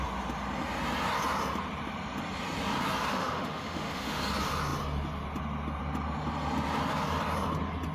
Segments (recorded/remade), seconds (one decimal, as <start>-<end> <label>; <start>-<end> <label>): 0.0-3.1 recorded; 3.1-4.2 remade; 4.2-7.9 recorded